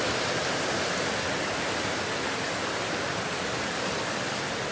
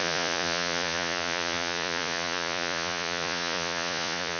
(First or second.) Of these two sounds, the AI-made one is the second